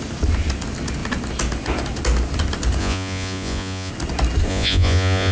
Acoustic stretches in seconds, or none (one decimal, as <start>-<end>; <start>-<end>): 0.0-2.8; 3.9-4.5